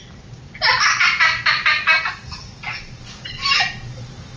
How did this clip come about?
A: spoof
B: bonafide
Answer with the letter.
B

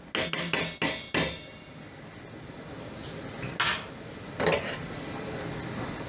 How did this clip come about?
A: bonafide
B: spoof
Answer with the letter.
A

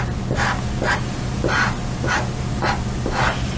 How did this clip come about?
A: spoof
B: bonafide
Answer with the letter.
B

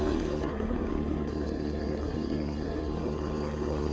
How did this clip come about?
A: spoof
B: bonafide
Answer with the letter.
A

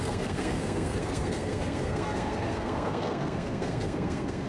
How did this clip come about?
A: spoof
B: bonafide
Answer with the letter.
A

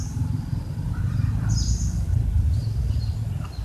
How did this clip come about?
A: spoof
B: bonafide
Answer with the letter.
B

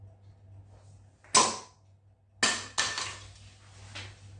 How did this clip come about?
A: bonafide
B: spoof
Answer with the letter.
A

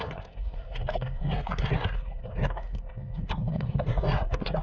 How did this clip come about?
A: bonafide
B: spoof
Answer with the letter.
B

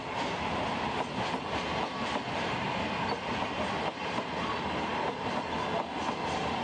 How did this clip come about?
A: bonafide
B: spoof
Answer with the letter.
A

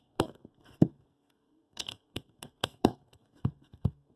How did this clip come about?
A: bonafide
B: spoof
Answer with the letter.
B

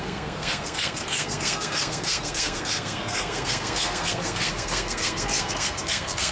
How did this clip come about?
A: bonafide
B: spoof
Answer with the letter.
B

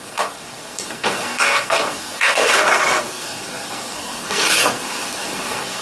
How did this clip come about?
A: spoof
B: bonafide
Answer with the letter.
A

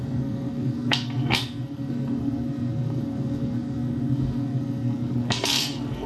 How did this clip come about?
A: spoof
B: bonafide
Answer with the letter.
A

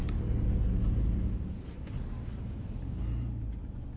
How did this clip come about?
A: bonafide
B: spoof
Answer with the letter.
A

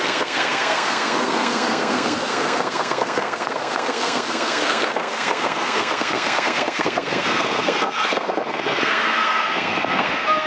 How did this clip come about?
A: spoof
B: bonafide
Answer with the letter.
A